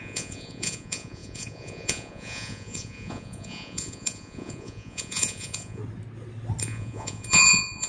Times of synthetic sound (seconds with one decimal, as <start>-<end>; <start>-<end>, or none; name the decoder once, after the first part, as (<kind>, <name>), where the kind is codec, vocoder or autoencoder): 0.0-5.8 (vocoder, Vocos); 6.6-7.9